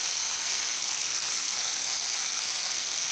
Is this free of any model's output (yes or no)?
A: no